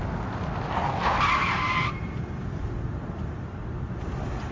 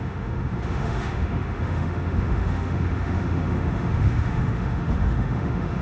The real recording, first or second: first